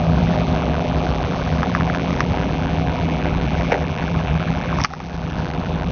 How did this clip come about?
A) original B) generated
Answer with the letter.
B